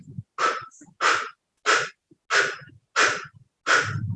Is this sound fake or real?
real